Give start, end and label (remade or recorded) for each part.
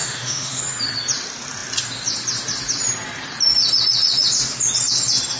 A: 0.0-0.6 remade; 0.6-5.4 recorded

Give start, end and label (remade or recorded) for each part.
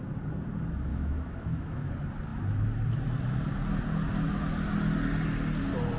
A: 0.0-0.9 recorded; 0.9-1.9 remade; 1.9-6.0 recorded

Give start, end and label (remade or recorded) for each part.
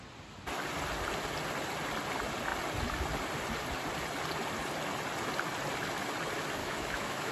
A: 0.0-6.6 recorded; 6.6-7.3 remade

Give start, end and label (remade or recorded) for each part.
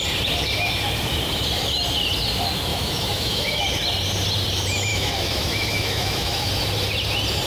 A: 0.0-2.7 recorded; 2.7-3.6 remade; 3.6-4.9 recorded; 4.9-6.5 remade; 6.5-7.5 recorded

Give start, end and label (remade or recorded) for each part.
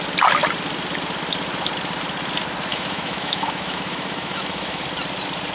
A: 0.0-2.7 recorded; 2.7-4.8 remade; 4.8-5.5 recorded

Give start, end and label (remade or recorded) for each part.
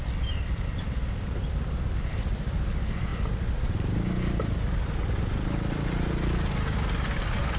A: 0.0-7.6 recorded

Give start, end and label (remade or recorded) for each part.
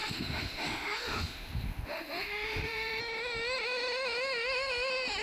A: 0.0-3.0 remade; 3.0-5.2 recorded